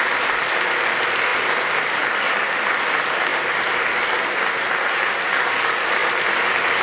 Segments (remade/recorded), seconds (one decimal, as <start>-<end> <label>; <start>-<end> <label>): 0.0-6.8 recorded